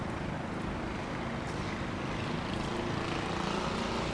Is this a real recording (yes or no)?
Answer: yes